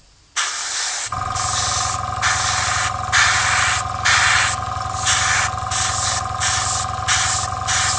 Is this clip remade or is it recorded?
recorded